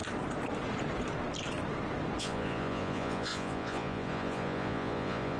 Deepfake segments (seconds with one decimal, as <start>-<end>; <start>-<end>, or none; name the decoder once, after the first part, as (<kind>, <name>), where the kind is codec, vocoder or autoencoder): 2.2-5.4 (vocoder, Vocos)